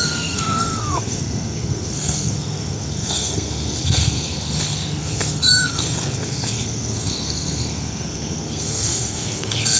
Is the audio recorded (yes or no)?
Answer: no